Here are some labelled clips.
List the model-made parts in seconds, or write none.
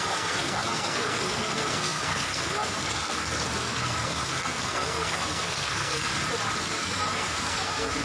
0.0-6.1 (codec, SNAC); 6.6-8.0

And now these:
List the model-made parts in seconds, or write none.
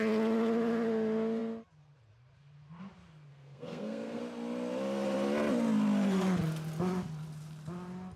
3.3-4.2 (codec, SNAC)